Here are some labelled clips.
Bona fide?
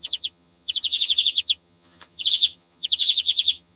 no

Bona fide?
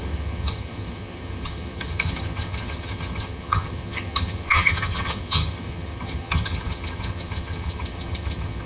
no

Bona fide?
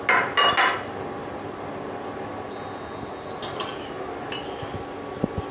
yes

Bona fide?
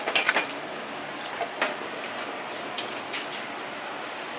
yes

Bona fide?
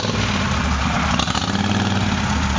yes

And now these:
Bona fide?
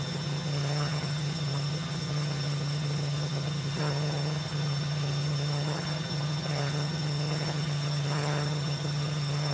no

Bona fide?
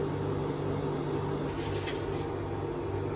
yes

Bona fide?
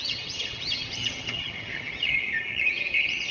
no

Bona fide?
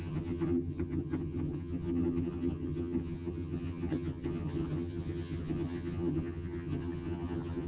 no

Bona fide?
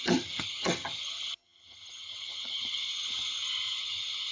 no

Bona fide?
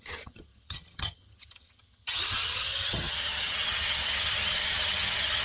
no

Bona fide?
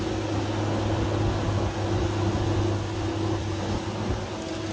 yes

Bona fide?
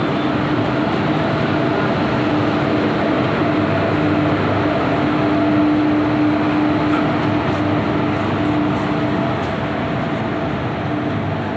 yes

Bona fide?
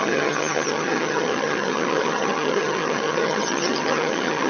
no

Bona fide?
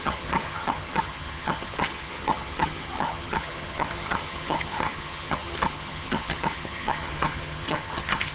no